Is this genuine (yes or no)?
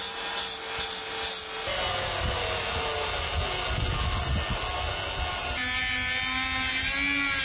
yes